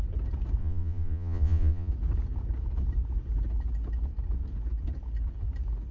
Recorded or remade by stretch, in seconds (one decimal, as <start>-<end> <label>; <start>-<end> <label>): 0.0-0.6 recorded; 0.6-1.9 remade; 1.9-5.9 recorded